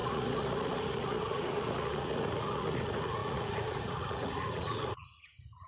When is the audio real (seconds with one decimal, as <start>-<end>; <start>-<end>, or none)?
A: none